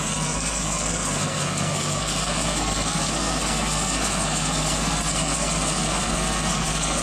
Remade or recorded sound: remade